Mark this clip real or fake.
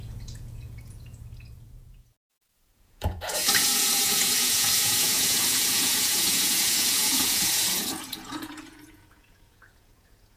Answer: fake